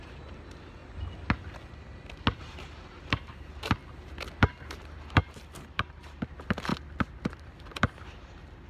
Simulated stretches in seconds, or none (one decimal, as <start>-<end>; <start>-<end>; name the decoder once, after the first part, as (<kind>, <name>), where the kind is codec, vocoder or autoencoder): 0.0-0.8 (vocoder, BigVGAN v2); 2.4-3.8; 4.4-6.7; 7.3-8.7